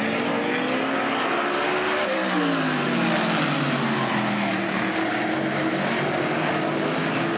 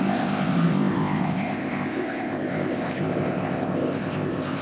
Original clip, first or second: first